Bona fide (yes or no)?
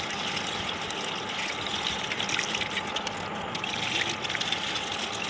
yes